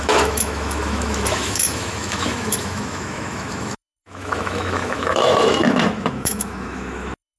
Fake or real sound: fake